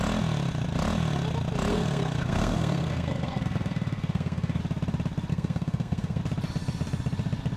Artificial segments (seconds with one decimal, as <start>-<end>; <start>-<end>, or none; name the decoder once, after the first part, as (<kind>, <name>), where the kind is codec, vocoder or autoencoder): 1.7-4.6 (codec, SNAC); 5.3-6.2